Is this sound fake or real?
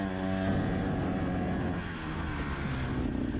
real